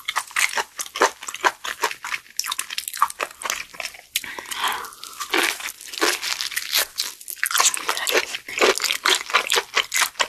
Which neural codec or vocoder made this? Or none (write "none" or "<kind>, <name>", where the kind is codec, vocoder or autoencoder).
none